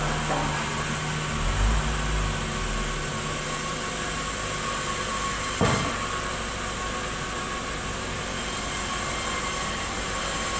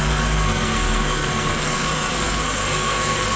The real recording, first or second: first